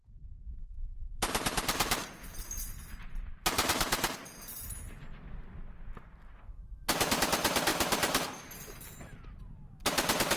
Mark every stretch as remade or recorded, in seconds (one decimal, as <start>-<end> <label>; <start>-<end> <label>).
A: 0.0-2.0 remade; 2.0-2.8 recorded; 2.8-5.1 remade; 5.1-6.4 recorded; 6.4-10.4 remade